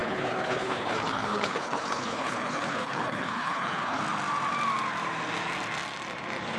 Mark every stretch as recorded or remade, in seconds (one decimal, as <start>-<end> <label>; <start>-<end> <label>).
0.0-4.0 remade; 4.0-6.6 recorded

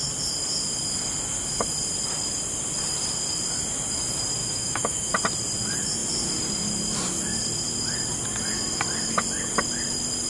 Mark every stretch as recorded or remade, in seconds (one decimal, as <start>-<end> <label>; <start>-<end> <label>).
0.0-4.4 recorded; 4.4-5.1 remade; 5.1-10.3 recorded

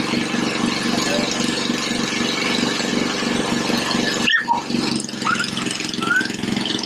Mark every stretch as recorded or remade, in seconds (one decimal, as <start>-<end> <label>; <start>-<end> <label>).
0.0-6.9 recorded

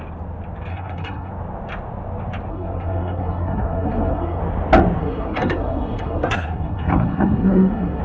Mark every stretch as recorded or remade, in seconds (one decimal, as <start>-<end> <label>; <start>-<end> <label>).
0.0-0.7 recorded; 0.7-1.3 remade; 1.3-2.5 recorded; 2.5-4.4 remade; 4.4-5.0 recorded; 5.0-8.0 remade

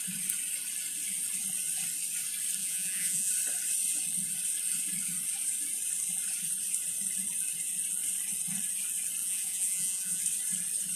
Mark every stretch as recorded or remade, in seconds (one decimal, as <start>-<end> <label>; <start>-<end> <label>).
0.0-2.6 recorded; 2.6-3.3 remade; 3.3-9.2 recorded; 9.2-10.2 remade; 10.2-11.0 recorded

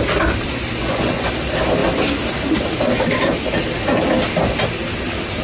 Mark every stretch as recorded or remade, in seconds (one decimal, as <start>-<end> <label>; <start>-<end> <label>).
0.0-0.8 recorded; 0.8-1.3 remade; 1.3-5.4 recorded

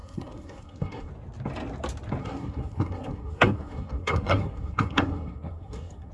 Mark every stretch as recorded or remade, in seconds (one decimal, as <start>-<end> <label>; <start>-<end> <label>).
0.0-1.1 remade; 1.1-2.2 recorded; 2.2-6.1 remade

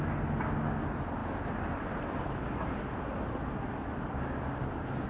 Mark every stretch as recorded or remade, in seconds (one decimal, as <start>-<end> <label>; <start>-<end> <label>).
0.0-5.1 recorded